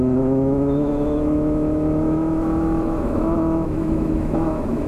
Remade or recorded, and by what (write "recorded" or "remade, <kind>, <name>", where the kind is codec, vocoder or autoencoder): remade, autoencoder, DAC-VAE